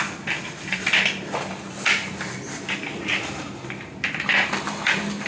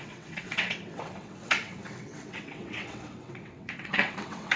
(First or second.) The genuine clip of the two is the first